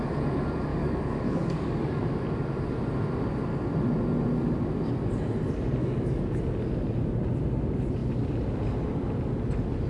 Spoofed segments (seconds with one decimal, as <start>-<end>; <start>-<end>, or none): 0.7-2.0; 5.8-6.4